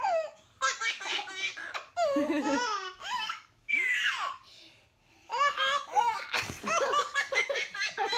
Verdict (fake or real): fake